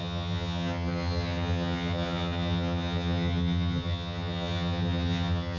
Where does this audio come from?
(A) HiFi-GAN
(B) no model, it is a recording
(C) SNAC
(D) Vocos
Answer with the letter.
A